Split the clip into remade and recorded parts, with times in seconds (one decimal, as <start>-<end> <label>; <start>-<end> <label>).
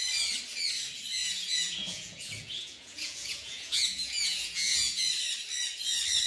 0.0-1.2 recorded; 1.2-5.0 remade; 5.0-6.3 recorded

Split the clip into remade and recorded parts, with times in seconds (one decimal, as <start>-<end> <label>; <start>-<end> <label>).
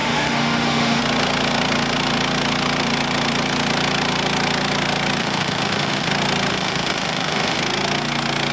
0.0-1.0 remade; 1.0-5.2 recorded; 5.2-6.1 remade; 6.1-6.5 recorded; 6.5-7.6 remade; 7.6-8.5 recorded